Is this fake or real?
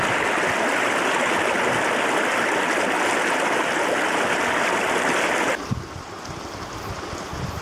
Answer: real